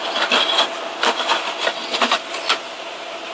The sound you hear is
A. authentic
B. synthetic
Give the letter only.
A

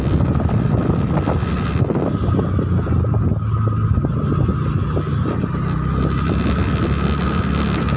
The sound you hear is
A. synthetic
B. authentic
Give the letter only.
B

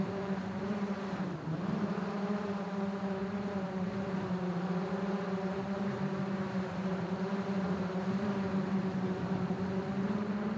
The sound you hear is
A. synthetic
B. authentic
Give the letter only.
A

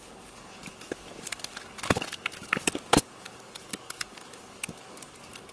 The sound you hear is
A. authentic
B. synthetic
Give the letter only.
B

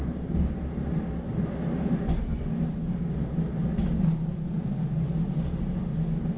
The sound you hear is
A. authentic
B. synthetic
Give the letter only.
A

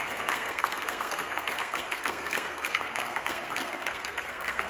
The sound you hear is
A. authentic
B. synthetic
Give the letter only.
B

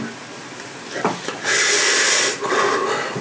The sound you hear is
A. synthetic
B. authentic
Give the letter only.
B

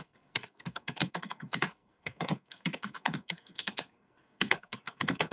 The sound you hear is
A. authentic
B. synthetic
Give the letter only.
B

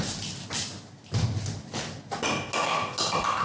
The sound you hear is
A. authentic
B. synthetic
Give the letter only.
A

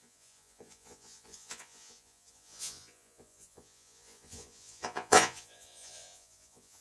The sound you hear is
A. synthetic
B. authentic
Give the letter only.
A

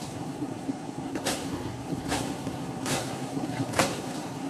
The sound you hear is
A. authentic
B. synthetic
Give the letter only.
B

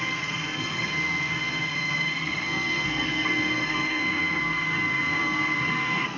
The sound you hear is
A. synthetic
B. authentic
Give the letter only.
A